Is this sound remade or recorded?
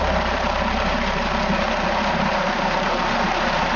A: recorded